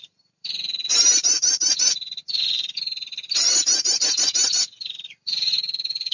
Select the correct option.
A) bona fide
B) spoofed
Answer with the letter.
B